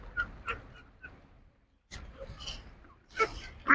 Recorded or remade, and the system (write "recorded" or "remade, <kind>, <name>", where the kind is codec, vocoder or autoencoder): recorded